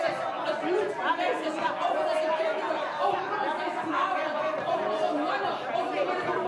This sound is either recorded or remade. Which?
recorded